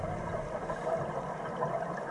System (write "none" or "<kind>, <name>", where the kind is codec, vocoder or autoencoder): none